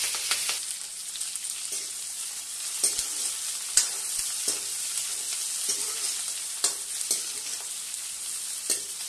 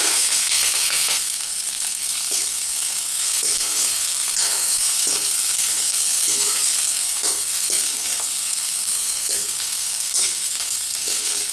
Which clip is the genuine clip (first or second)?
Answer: first